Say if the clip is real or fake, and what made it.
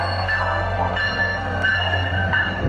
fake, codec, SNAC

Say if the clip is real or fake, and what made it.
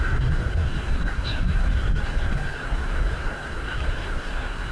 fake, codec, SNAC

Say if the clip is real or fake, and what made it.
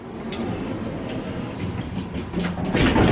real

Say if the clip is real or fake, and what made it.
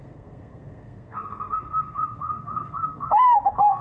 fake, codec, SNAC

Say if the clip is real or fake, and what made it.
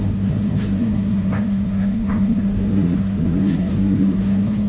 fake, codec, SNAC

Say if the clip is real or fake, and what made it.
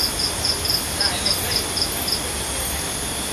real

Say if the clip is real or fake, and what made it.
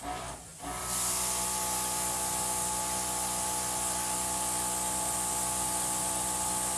real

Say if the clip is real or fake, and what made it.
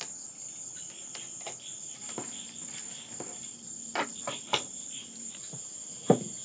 real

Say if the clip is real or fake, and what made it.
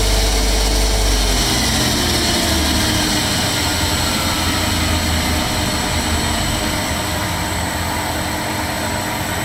real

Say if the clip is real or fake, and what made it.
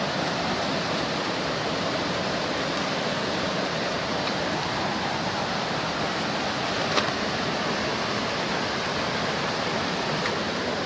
real